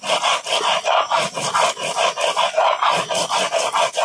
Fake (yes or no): no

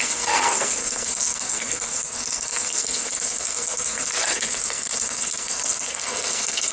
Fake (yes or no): yes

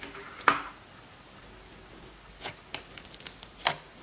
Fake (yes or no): no